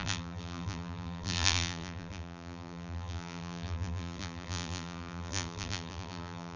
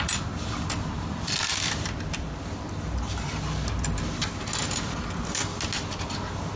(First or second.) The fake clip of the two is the first